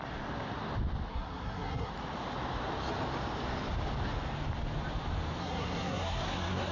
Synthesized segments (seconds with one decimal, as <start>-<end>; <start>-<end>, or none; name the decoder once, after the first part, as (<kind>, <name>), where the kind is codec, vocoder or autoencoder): 1.1-1.9 (codec, SNAC); 5.4-6.7